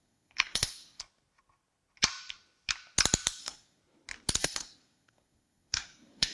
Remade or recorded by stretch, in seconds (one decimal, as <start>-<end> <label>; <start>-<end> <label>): 0.0-1.0 remade; 1.0-3.4 recorded; 3.4-3.8 remade; 3.8-4.4 recorded; 4.4-6.3 remade